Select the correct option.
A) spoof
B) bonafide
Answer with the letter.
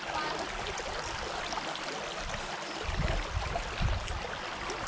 B